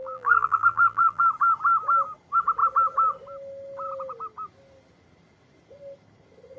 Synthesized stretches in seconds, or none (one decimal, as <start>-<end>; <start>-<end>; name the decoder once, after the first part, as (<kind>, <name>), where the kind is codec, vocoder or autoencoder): 0.0-1.2 (vocoder, BigVGAN v2)